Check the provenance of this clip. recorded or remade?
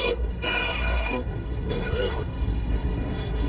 remade